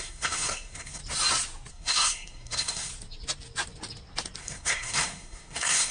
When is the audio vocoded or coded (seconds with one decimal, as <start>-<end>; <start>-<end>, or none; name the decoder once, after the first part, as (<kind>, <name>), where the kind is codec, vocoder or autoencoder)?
0.0-1.0 (codec, SNAC); 1.7-2.9; 4.4-5.9